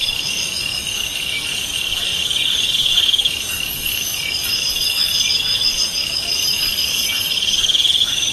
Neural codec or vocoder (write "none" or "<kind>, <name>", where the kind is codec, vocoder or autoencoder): codec, DAC